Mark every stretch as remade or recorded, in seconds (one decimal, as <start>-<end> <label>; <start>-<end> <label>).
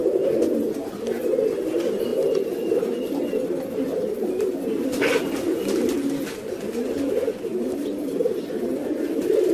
0.0-0.6 remade; 0.6-7.5 recorded; 7.5-8.8 remade; 8.8-9.5 recorded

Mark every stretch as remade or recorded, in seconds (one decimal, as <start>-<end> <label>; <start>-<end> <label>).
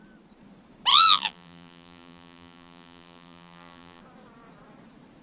0.0-0.9 recorded; 0.9-4.0 remade; 4.0-5.2 recorded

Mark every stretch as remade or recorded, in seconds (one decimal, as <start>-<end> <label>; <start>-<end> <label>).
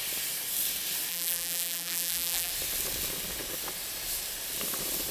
0.0-1.1 recorded; 1.1-2.5 remade; 2.5-5.1 recorded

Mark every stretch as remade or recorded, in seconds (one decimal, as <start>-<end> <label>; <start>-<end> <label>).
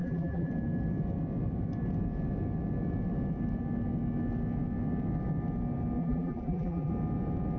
0.0-0.5 remade; 0.5-6.0 recorded; 6.0-6.9 remade; 6.9-7.6 recorded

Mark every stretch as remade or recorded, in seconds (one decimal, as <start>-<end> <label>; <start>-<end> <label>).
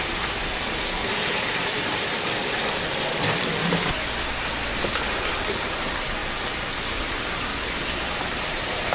0.0-2.4 remade; 2.4-5.3 recorded; 5.3-7.5 remade; 7.5-8.2 recorded; 8.2-8.9 remade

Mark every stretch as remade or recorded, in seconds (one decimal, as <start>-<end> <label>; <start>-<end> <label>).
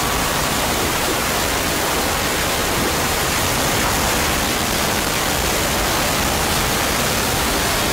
0.0-0.4 recorded; 0.4-1.3 remade; 1.3-2.6 recorded; 2.6-3.3 remade; 3.3-7.9 recorded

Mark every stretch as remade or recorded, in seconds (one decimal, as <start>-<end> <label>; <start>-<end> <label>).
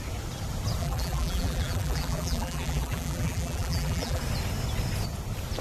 0.0-0.8 recorded; 0.8-4.2 remade; 4.2-5.6 recorded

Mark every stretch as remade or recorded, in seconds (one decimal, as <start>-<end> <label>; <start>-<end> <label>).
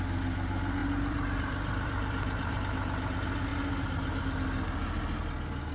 0.0-0.8 recorded; 0.8-2.5 remade; 2.5-5.7 recorded